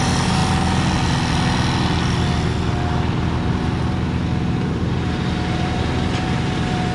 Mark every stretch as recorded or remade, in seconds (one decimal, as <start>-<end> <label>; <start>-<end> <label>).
0.0-0.4 remade; 0.4-4.4 recorded; 4.4-6.9 remade